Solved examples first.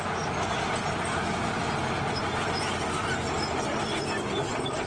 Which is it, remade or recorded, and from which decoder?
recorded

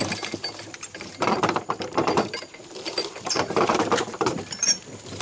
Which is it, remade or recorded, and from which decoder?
remade, vocoder, BigVGAN v2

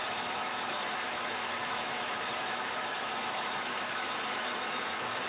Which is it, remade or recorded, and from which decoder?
remade, autoencoder, DAC-VAE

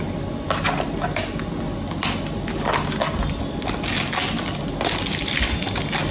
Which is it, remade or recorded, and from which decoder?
recorded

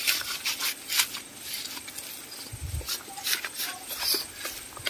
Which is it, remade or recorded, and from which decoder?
recorded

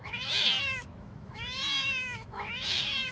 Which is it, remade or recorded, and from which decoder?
remade, autoencoder, DAC-VAE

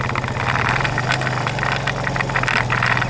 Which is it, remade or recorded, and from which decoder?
recorded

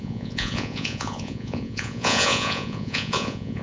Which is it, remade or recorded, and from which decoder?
remade, vocoder, Vocos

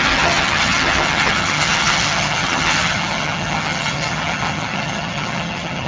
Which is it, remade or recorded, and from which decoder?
remade, vocoder, HiFi-GAN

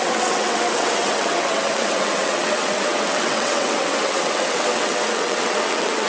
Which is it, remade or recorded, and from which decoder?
remade, vocoder, WaveNeXt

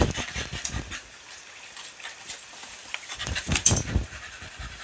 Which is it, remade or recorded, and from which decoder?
remade, vocoder, BigVGAN v2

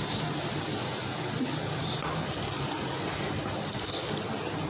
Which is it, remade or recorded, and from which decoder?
recorded